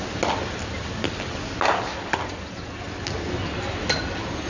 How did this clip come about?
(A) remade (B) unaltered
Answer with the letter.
B